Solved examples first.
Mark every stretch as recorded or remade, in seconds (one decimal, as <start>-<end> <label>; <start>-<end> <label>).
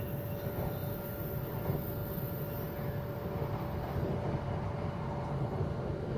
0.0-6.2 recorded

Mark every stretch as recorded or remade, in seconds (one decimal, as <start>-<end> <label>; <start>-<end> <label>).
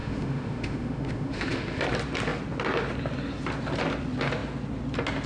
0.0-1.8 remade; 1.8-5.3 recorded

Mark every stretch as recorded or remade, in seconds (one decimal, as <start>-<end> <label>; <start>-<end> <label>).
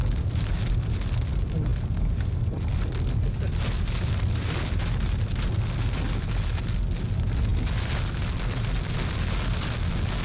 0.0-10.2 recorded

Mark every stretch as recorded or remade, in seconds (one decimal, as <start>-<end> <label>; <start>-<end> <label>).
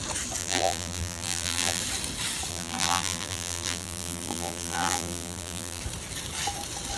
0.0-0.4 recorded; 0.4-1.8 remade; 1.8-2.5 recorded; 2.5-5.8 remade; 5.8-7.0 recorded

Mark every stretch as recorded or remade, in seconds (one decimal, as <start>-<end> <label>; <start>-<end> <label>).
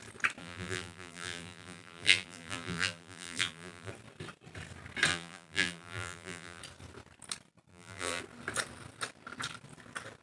0.0-0.4 recorded; 0.4-3.9 remade; 3.9-5.1 recorded; 5.1-6.6 remade; 6.6-7.7 recorded; 7.7-8.2 remade; 8.2-10.2 recorded